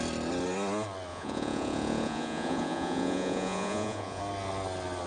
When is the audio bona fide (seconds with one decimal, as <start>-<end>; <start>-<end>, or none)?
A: 0.0-1.1; 4.2-5.1

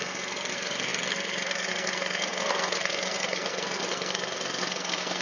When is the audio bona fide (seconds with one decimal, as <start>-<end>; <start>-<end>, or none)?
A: none

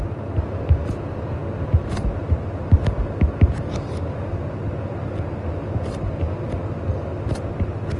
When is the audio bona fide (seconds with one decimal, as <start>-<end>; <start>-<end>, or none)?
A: 0.0-8.0

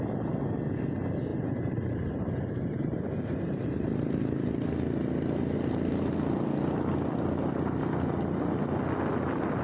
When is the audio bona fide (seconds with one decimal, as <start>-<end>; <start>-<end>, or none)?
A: 0.0-1.3; 4.0-9.6

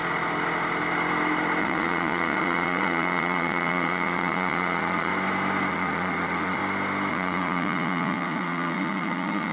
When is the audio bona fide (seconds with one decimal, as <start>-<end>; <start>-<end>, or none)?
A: 0.0-1.6; 5.1-5.7; 6.6-7.1

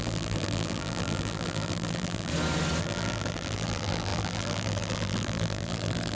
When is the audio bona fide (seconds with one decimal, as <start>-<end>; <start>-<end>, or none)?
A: 2.3-2.8